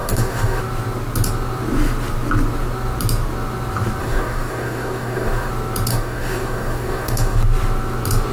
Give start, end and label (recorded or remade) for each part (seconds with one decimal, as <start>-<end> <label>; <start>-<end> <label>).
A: 0.0-0.6 remade; 0.6-4.0 recorded; 4.0-5.5 remade; 5.5-5.9 recorded; 5.9-7.4 remade; 7.4-8.3 recorded